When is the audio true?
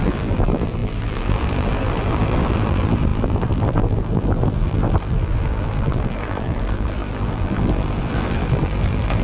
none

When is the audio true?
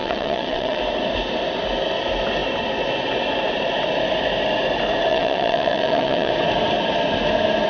0.8-5.1; 6.3-7.7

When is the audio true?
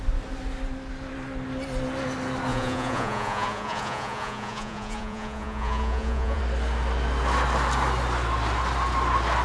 0.0-2.5; 6.4-9.4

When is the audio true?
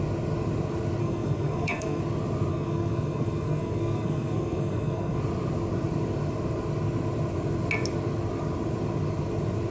0.0-1.0; 2.0-2.5; 5.2-9.7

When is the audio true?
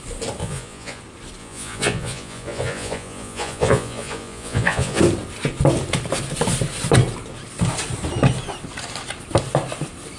0.0-0.4; 1.0-1.4; 5.0-10.2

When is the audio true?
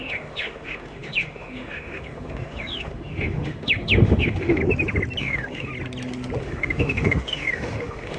4.6-5.2; 5.7-6.4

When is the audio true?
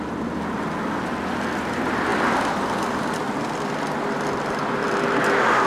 0.0-5.7